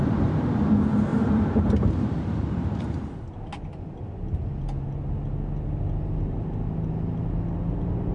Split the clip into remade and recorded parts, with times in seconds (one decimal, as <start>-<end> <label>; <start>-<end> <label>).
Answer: 0.0-1.1 recorded; 1.1-3.1 remade; 3.1-8.1 recorded